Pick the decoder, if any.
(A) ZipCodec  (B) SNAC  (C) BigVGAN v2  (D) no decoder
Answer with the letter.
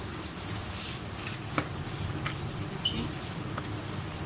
D